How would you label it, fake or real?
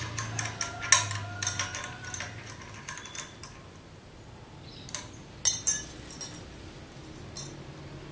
real